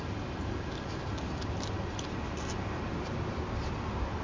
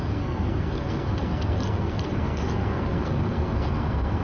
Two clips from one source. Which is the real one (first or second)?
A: first